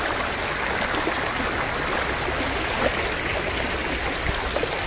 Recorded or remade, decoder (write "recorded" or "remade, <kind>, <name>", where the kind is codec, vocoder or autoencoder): recorded